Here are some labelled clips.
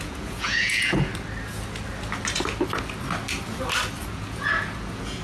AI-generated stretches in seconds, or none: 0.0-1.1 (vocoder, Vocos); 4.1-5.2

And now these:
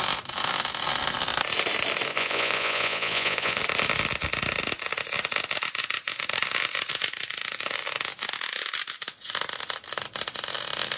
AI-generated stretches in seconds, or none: 2.1-3.6 (vocoder, Vocos)

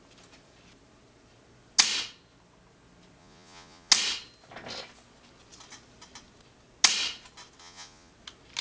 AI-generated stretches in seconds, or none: 3.2-3.9 (vocoder, Vocos); 7.6-8.1

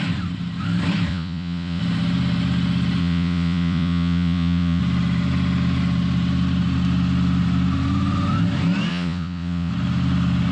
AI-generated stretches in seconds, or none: 1.1-1.8 (vocoder, Vocos); 3.0-4.8; 8.9-9.7

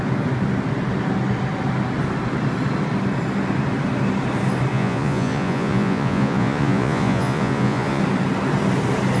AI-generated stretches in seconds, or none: 4.7-8.0 (vocoder, Vocos)

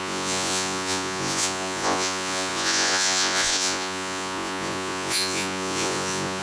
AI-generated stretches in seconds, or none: 0.0-6.4 (vocoder, Vocos)